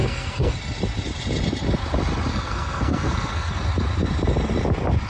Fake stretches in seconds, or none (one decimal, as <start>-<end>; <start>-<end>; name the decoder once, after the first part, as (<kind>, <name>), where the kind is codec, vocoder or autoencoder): 0.0-0.5 (codec, SNAC); 2.3-3.5